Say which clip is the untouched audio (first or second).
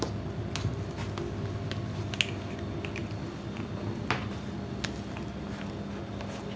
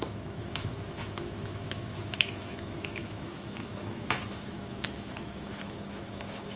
first